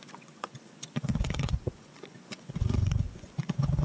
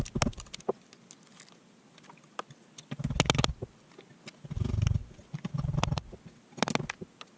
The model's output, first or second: first